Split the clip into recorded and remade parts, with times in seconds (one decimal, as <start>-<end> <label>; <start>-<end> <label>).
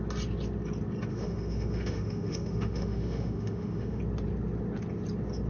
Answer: 0.0-1.1 recorded; 1.1-4.0 remade; 4.0-5.5 recorded